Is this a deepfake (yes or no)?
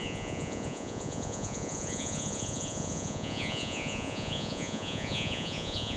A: yes